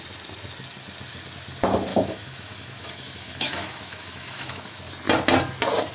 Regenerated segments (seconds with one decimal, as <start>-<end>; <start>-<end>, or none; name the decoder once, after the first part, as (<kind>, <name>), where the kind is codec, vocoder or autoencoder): 1.9-4.8 (autoencoder, DAC-VAE)